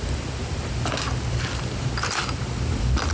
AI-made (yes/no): no